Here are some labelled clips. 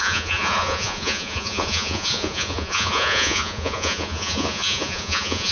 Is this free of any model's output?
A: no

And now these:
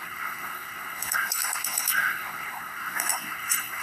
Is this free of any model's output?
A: no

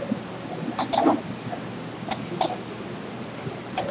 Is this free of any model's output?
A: yes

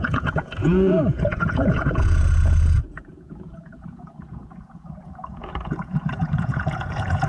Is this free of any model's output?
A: no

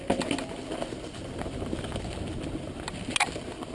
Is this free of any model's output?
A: yes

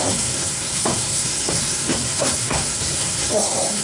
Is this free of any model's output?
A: no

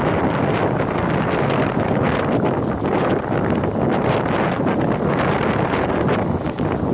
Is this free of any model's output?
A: yes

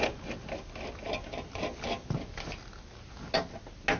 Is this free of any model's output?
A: yes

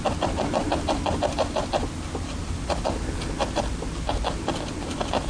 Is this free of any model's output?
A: yes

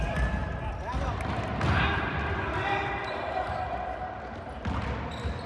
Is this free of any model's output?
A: yes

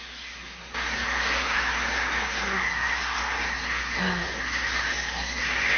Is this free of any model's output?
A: no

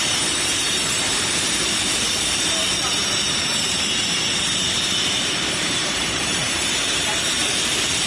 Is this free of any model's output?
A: no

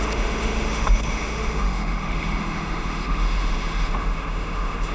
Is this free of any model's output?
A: no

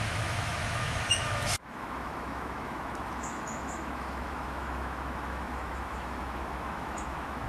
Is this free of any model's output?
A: no